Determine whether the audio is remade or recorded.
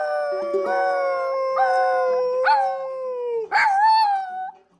recorded